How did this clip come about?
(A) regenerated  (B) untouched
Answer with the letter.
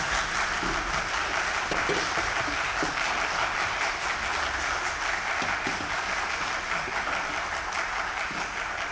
B